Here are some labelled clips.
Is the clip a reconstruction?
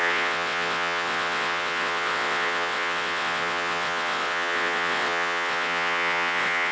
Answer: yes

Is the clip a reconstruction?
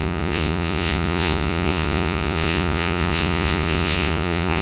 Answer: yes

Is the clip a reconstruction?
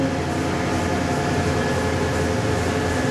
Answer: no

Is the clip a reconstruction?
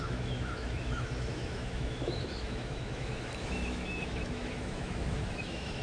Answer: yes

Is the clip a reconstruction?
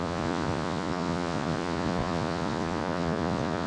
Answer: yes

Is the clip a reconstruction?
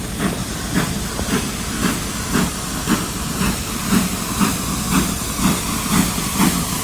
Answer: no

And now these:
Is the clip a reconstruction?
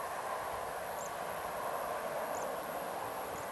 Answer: no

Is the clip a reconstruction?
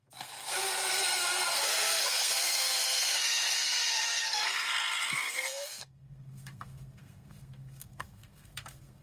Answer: yes